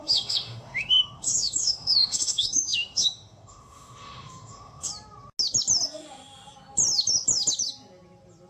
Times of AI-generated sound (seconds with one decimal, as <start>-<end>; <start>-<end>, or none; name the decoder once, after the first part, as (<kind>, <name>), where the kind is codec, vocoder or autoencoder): 0.0-4.9 (autoencoder, DAC-VAE)